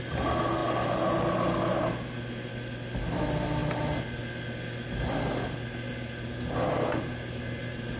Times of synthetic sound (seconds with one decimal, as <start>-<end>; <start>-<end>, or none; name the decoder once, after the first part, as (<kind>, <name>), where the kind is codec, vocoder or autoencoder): none